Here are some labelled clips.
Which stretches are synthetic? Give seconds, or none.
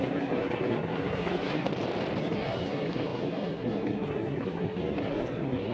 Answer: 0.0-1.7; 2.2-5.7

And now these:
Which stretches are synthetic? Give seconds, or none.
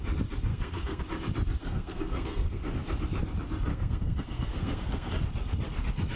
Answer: 0.5-1.0; 1.6-2.6; 3.7-5.1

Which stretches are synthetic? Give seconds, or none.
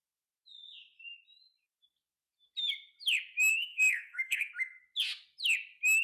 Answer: 3.5-4.5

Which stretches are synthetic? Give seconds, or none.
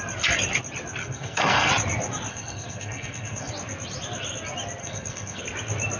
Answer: 1.0-1.7; 2.3-3.5; 4.8-5.4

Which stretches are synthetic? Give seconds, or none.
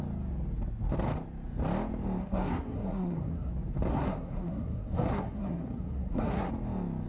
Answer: 2.2-3.5; 3.9-6.5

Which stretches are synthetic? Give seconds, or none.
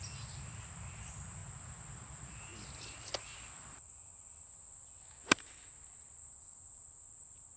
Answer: none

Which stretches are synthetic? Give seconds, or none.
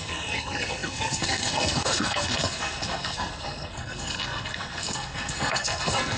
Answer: 0.0-6.2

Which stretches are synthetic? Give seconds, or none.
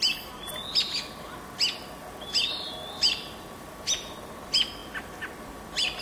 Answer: none